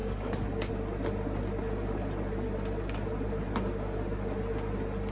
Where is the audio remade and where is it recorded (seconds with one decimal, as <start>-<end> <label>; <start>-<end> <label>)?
0.0-0.7 remade; 0.7-5.1 recorded